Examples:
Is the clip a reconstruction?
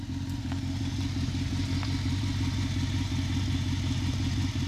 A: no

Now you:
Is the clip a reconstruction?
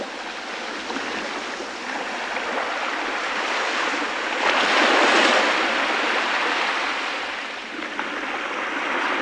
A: no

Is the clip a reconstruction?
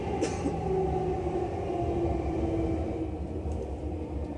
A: no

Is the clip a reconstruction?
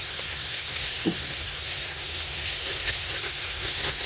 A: yes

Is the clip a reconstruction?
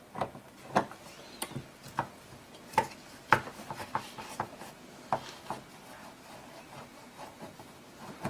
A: no